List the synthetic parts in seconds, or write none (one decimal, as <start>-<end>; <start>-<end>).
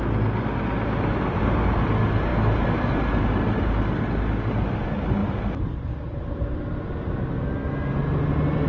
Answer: none